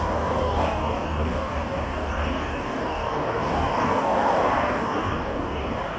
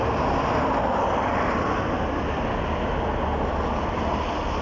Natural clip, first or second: second